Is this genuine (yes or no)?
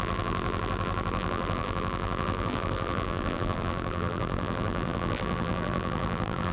no